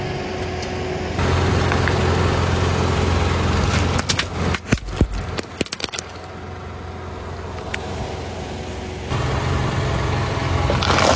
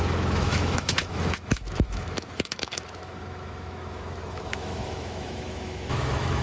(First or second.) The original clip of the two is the first